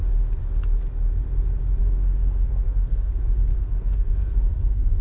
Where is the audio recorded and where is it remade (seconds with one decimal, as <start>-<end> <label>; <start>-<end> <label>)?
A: 0.0-1.8 recorded; 1.8-3.1 remade; 3.1-3.5 recorded; 3.5-5.0 remade